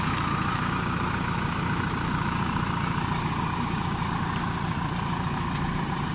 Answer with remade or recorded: remade